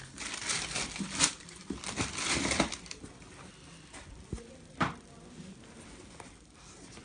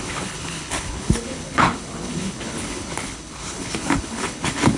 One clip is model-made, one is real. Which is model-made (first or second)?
second